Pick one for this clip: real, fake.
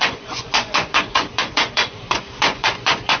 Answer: fake